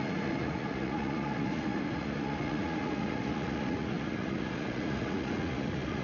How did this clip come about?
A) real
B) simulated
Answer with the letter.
B